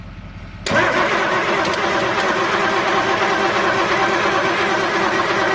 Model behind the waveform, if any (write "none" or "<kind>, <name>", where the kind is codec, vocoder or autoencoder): none